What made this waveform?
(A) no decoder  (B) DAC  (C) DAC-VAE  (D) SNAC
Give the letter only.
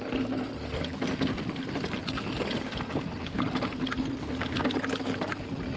A